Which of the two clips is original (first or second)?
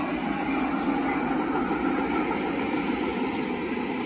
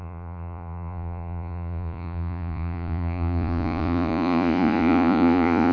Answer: first